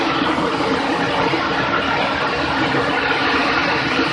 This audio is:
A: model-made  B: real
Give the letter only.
B